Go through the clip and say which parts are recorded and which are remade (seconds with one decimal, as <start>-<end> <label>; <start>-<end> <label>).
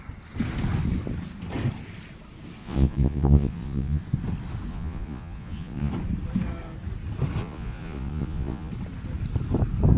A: 0.0-2.6 recorded; 2.6-4.0 remade; 4.0-4.7 recorded; 4.7-5.9 remade; 5.9-7.4 recorded; 7.4-8.7 remade; 8.7-10.0 recorded